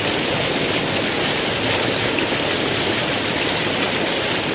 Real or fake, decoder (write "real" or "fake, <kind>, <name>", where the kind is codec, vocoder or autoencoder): real